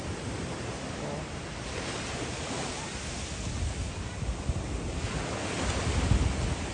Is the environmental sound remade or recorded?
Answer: recorded